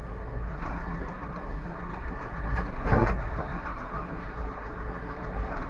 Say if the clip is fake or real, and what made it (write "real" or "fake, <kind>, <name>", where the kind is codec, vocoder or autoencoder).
fake, codec, SNAC